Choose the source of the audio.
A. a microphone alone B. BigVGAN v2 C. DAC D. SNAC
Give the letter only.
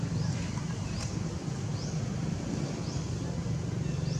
A